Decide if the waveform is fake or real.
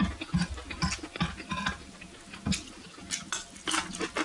real